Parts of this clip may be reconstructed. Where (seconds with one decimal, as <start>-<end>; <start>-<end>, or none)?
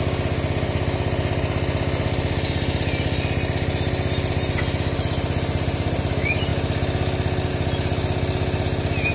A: none